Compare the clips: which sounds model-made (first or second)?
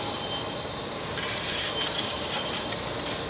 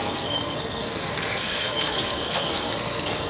second